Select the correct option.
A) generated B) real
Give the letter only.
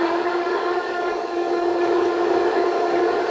A